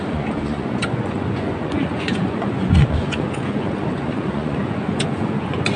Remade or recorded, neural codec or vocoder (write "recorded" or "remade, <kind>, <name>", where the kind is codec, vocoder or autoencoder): remade, vocoder, Vocos